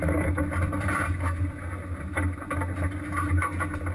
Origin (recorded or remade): recorded